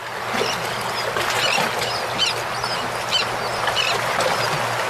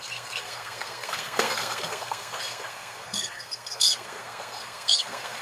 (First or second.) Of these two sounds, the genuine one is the first